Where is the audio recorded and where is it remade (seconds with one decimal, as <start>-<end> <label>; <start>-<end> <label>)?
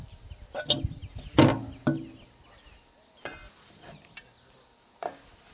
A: 0.0-5.5 recorded